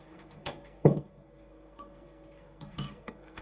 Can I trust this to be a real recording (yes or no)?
no